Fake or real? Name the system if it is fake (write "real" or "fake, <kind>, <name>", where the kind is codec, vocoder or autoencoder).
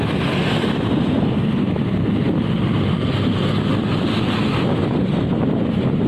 real